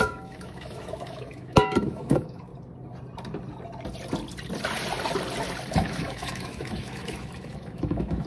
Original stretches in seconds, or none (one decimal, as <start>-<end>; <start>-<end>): 2.5-5.7